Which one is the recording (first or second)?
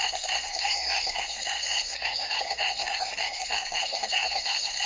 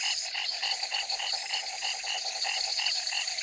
second